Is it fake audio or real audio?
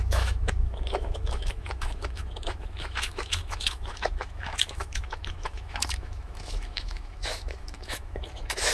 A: fake